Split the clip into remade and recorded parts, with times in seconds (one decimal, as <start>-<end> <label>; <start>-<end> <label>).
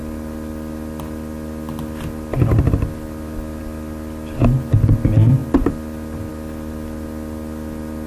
0.0-8.1 recorded